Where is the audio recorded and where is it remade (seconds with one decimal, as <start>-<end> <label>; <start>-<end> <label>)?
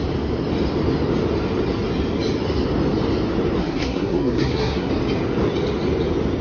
0.0-3.6 recorded; 3.6-4.9 remade; 4.9-6.4 recorded